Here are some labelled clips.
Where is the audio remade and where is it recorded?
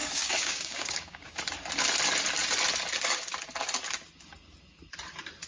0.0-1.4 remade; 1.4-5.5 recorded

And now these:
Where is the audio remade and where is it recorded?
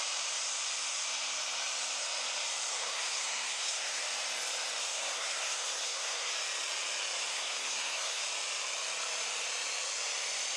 0.0-2.7 recorded; 2.7-4.0 remade; 4.0-4.8 recorded; 4.8-6.3 remade; 6.3-7.3 recorded; 7.3-8.2 remade; 8.2-10.6 recorded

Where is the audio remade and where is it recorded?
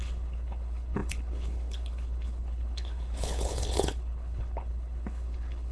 0.0-5.7 remade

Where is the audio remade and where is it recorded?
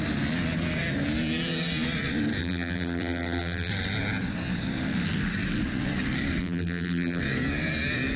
0.0-2.4 recorded; 2.4-3.7 remade; 3.7-6.4 recorded; 6.4-7.2 remade; 7.2-8.2 recorded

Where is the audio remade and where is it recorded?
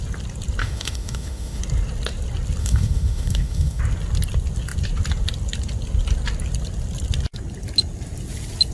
0.0-0.6 recorded; 0.6-1.6 remade; 1.6-2.6 recorded; 2.6-3.8 remade; 3.8-8.7 recorded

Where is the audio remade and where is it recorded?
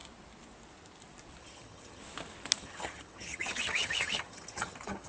0.0-1.4 recorded; 1.4-2.0 remade; 2.0-2.6 recorded; 2.6-5.1 remade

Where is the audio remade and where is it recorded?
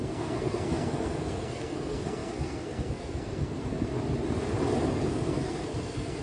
0.0-3.9 remade; 3.9-4.9 recorded; 4.9-6.2 remade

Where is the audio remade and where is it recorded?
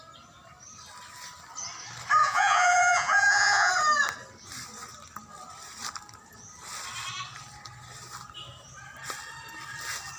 0.0-2.2 recorded; 2.2-3.7 remade; 3.7-10.2 recorded